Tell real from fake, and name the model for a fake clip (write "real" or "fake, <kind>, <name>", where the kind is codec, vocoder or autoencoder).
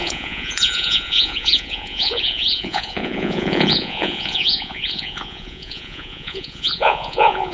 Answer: fake, vocoder, Vocos